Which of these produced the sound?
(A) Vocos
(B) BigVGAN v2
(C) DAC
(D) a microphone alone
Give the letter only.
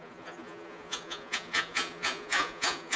A